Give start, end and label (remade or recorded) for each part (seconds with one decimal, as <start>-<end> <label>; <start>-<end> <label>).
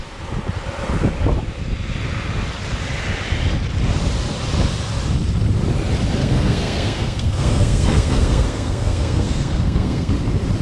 0.0-6.2 recorded; 6.2-10.1 remade; 10.1-10.6 recorded